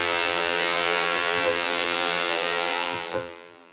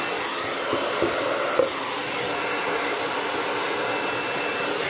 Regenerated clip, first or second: first